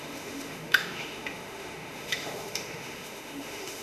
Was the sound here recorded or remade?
remade